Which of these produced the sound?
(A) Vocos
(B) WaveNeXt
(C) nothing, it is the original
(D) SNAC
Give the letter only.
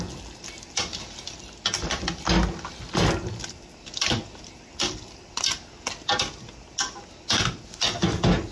C